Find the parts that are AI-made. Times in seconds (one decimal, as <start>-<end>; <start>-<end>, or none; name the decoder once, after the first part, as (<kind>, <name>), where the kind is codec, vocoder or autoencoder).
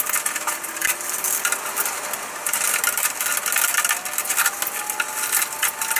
none